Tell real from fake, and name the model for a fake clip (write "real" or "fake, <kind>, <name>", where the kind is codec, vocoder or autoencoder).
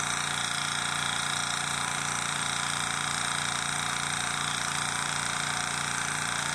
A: fake, vocoder, BigVGAN v2